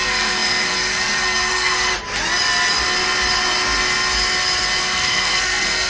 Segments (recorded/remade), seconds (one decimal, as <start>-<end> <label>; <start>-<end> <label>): 0.0-1.9 remade; 1.9-4.8 recorded; 4.8-5.9 remade